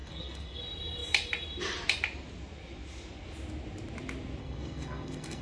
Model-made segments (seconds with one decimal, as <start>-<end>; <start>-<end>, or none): 0.0-0.6; 4.4-5.4

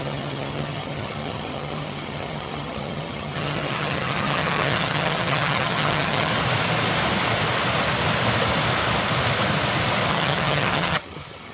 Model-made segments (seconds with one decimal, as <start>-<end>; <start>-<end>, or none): 0.0-6.3; 10.1-11.5

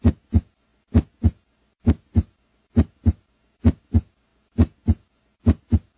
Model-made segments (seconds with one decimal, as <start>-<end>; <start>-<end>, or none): none

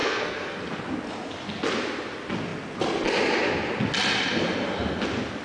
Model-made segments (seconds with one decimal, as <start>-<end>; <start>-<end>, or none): 0.0-0.6

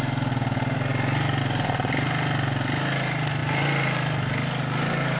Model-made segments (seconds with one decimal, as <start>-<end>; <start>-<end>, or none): none

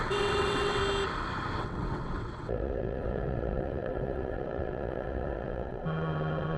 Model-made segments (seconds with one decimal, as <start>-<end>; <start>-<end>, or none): 0.0-0.8; 1.6-6.6

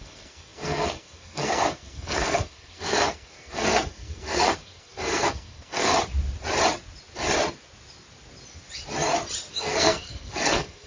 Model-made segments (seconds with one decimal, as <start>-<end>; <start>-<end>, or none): 0.0-5.9; 9.5-10.9